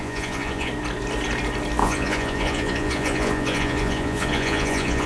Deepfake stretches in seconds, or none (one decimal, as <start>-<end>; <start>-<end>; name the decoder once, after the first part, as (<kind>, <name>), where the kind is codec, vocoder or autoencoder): 0.0-0.7 (vocoder, Vocos); 1.8-5.1